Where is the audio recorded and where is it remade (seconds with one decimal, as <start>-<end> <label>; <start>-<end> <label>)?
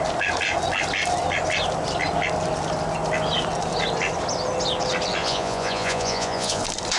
0.0-5.2 recorded; 5.2-6.6 remade; 6.6-7.0 recorded